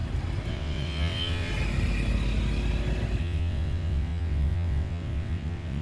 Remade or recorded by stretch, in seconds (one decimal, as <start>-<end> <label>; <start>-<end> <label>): 0.0-0.5 recorded; 0.5-1.5 remade; 1.5-3.2 recorded; 3.2-5.8 remade